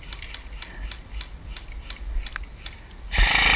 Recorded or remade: recorded